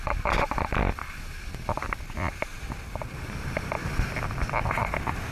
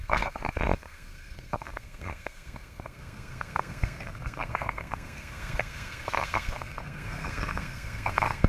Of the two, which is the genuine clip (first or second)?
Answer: first